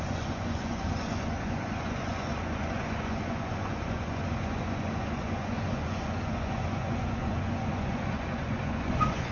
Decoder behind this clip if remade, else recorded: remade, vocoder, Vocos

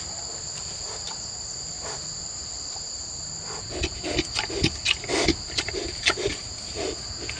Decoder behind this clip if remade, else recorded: recorded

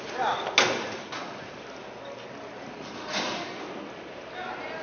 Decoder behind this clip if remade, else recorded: recorded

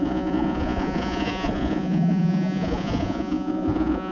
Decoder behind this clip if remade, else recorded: remade, vocoder, Vocos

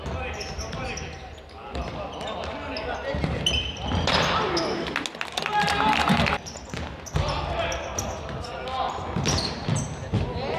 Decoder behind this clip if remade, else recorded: recorded